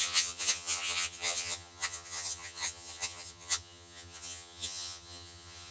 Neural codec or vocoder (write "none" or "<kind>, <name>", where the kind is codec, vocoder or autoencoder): vocoder, HiFi-GAN